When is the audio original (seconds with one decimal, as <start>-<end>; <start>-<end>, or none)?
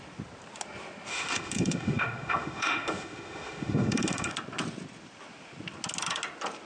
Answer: 0.0-1.1; 4.3-6.7